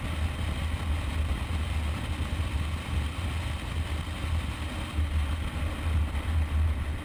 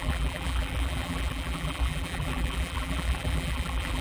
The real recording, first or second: first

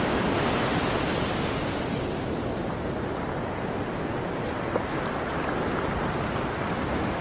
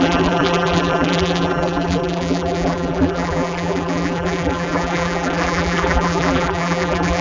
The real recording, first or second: first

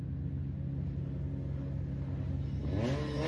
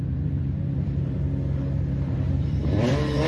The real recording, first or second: first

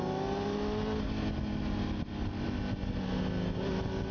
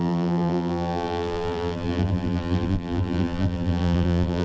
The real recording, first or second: first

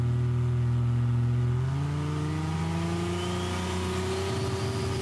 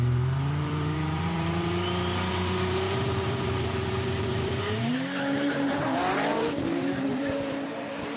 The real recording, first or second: first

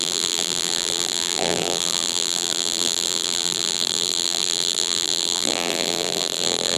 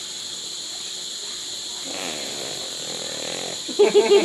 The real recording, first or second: second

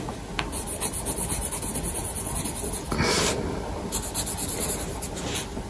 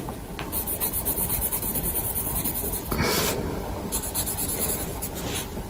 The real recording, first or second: first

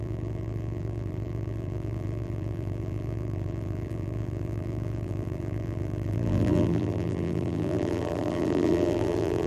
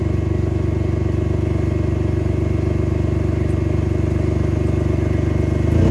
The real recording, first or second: second